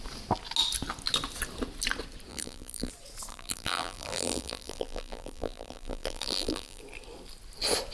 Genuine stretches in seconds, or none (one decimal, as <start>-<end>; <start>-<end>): 0.0-2.3; 2.9-3.3; 6.8-7.9